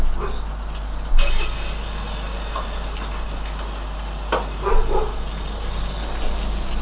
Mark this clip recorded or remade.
recorded